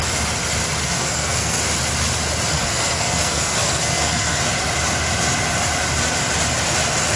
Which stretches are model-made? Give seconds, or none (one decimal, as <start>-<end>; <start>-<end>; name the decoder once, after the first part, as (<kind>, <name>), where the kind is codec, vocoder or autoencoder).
0.8-1.6 (codec, SNAC); 2.5-4.4